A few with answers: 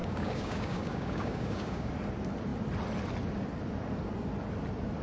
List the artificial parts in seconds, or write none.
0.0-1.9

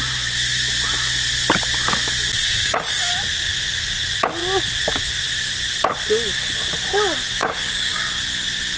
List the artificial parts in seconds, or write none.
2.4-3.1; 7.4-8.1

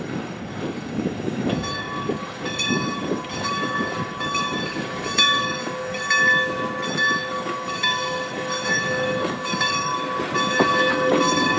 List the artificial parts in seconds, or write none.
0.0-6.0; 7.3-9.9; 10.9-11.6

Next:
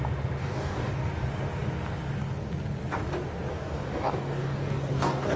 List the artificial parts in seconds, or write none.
0.4-0.9; 3.5-5.4

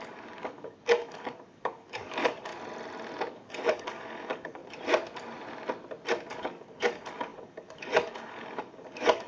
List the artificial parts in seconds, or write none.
0.0-2.5; 3.3-4.6; 6.3-9.3

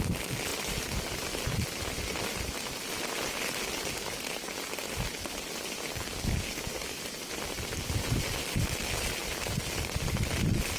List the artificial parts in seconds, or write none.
5.9-7.0

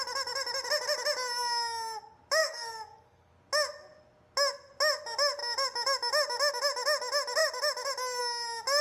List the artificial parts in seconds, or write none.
2.4-3.3